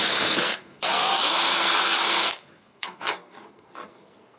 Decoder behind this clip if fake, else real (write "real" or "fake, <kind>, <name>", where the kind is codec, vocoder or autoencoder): fake, codec, SNAC